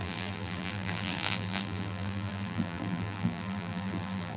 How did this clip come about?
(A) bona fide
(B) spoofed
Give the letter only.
B